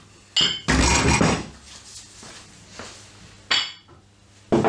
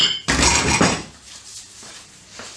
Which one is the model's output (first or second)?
second